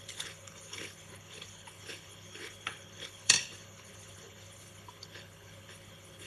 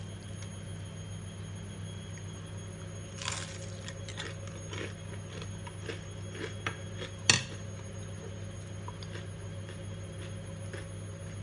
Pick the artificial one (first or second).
first